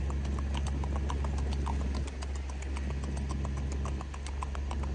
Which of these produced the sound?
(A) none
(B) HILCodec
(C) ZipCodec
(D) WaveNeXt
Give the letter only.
A